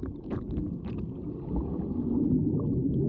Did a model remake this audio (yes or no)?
no